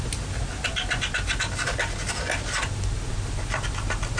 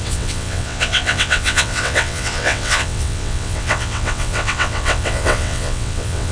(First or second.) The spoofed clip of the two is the second